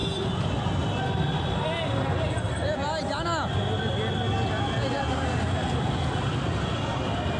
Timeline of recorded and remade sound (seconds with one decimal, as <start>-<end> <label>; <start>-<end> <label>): 0.0-2.1 recorded; 2.1-2.8 remade; 2.8-6.0 recorded; 6.0-7.4 remade

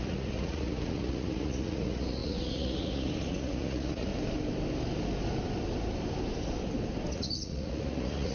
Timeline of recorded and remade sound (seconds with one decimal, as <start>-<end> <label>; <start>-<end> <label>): 0.0-4.1 remade; 4.1-7.1 recorded; 7.1-8.3 remade